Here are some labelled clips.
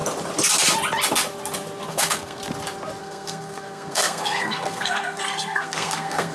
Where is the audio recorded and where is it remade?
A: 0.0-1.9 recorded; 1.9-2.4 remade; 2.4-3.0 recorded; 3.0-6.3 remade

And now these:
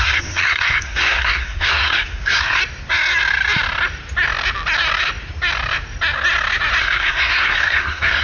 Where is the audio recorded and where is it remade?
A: 0.0-2.6 remade; 2.6-6.8 recorded; 6.8-8.2 remade